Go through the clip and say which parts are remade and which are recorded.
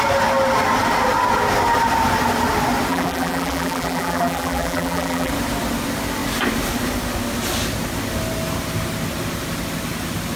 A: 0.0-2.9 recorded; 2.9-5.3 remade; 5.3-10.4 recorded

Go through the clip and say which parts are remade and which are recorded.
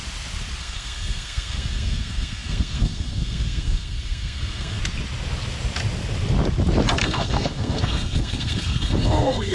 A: 0.0-0.6 recorded; 0.6-4.8 remade; 4.8-7.0 recorded; 7.0-9.5 remade